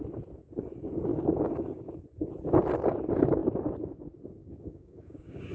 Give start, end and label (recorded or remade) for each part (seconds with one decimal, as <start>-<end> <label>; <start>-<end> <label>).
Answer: 0.0-1.1 recorded; 1.1-1.9 remade; 1.9-4.4 recorded; 4.4-5.5 remade